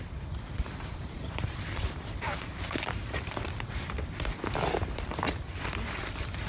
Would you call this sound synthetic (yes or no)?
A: yes